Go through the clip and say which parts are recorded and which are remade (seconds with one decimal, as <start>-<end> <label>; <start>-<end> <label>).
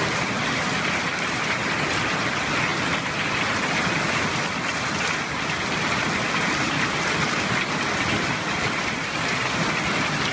0.0-10.3 recorded